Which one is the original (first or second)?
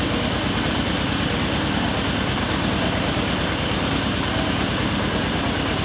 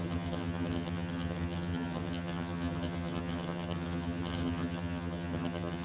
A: first